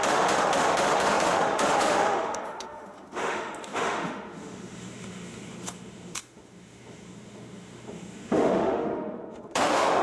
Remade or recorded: remade